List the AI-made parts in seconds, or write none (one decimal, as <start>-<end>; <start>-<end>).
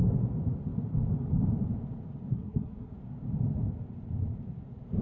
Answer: 2.3-2.9